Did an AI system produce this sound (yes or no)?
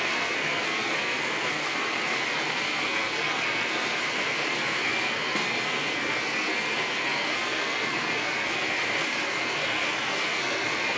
yes